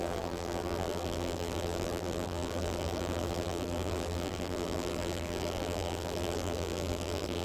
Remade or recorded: remade